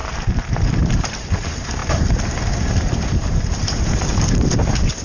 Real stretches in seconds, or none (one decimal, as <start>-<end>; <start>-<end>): 0.0-1.0